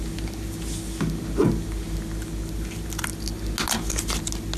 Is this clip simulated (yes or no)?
no